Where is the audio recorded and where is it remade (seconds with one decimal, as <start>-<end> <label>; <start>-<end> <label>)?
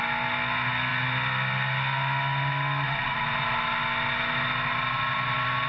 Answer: 0.0-5.7 recorded